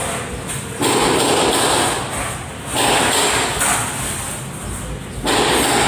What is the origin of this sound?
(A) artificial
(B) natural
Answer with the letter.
B